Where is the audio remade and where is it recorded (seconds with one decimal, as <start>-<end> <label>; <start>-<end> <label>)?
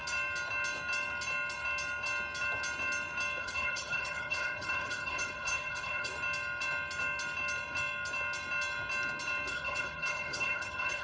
0.0-3.4 recorded; 3.4-6.1 remade; 6.1-9.5 recorded; 9.5-11.0 remade